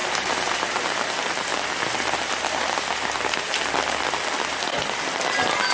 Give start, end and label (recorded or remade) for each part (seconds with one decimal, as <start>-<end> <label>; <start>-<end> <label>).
0.0-0.8 remade; 0.8-5.7 recorded